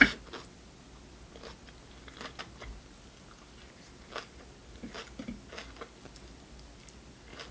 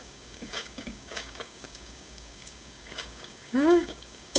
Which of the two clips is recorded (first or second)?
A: first